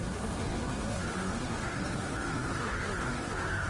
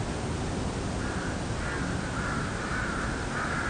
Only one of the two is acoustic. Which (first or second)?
second